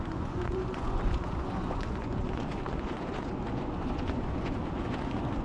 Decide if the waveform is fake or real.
fake